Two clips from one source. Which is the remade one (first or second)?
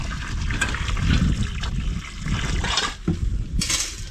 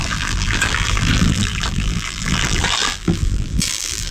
second